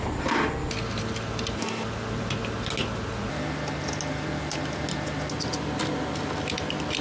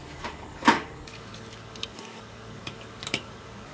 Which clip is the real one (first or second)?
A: first